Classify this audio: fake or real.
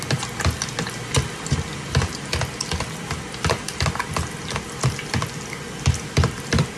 real